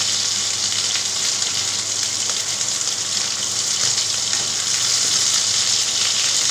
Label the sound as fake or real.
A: real